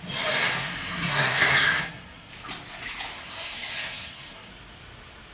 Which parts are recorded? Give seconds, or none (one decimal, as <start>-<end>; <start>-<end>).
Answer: 0.0-0.6; 2.3-3.1; 4.5-5.3